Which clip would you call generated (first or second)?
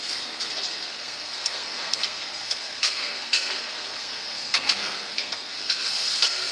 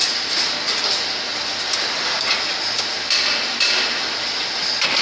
first